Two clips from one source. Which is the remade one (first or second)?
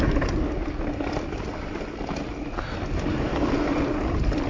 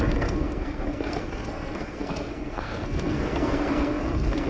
second